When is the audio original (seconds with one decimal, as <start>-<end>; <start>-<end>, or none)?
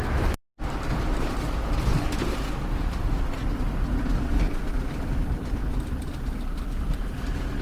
0.0-2.7; 3.2-7.6